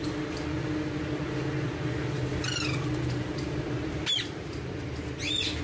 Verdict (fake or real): real